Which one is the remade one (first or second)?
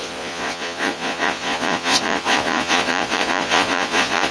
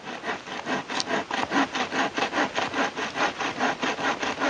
first